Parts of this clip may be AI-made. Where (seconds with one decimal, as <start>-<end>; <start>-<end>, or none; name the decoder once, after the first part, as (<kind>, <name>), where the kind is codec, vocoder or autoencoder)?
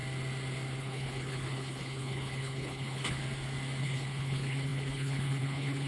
0.8-3.2 (codec, HILCodec); 3.8-5.9